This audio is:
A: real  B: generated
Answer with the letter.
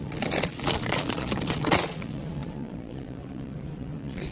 B